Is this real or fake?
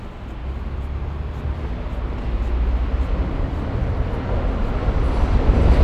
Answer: real